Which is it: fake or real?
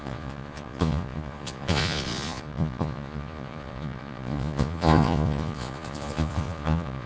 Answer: fake